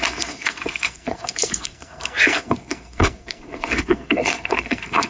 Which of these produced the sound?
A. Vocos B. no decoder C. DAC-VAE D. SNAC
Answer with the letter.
D